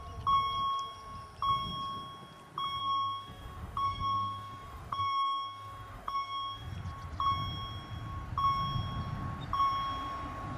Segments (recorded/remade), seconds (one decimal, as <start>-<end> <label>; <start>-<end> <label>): 0.0-2.8 recorded; 2.8-6.7 remade; 6.7-10.6 recorded